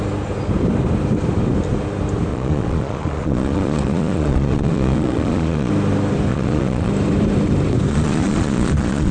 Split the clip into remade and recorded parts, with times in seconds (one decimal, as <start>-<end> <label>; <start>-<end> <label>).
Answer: 0.0-2.3 recorded; 2.3-5.7 remade; 5.7-6.3 recorded; 6.3-6.9 remade; 6.9-7.9 recorded; 7.9-9.1 remade

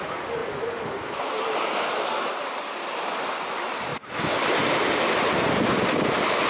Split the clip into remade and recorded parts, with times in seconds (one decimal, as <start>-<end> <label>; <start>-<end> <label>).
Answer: 0.0-6.5 recorded

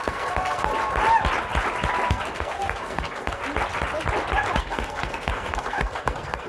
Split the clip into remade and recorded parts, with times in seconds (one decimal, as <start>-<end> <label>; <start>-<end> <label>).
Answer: 0.0-0.7 remade; 0.7-2.1 recorded; 2.1-3.4 remade; 3.4-4.6 recorded; 4.6-6.5 remade

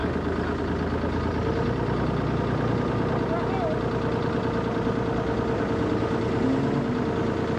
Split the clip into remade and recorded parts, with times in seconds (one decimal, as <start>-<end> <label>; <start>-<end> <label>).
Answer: 0.0-7.6 recorded